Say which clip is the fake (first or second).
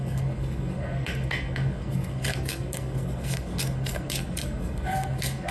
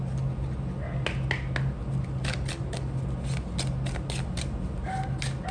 first